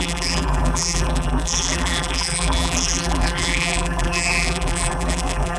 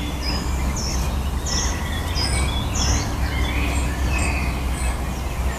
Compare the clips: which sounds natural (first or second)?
second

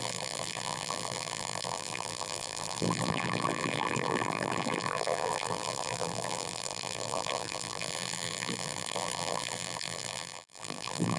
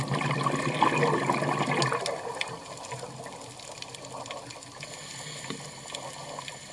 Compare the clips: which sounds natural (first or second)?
second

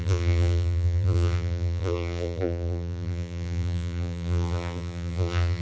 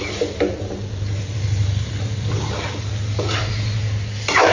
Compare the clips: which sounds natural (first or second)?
second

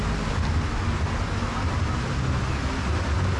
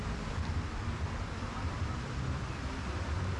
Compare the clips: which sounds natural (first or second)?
first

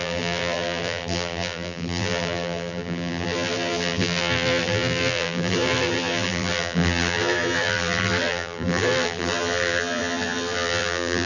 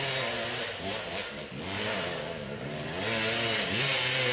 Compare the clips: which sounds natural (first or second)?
second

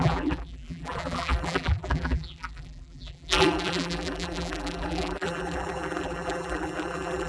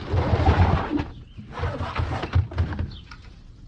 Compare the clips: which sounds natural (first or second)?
second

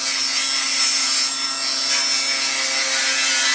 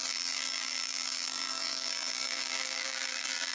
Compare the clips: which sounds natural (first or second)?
first